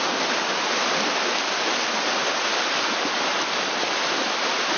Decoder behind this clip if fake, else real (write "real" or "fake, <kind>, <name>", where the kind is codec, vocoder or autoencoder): real